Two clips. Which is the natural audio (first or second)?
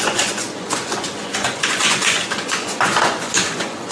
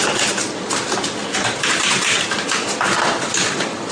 second